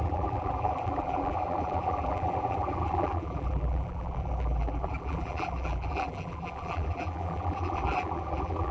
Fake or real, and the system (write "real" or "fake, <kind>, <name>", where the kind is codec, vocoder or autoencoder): fake, vocoder, BigVGAN v2